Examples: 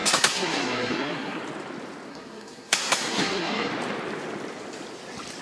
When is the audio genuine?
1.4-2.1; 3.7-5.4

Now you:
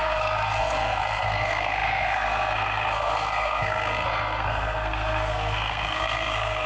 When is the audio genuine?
none

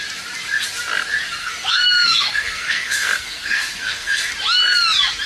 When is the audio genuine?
0.0-1.4; 4.3-5.3

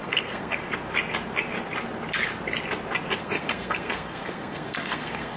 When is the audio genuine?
0.6-3.2